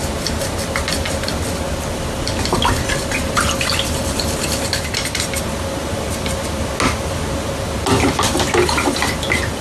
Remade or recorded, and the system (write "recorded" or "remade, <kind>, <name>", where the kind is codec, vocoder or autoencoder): recorded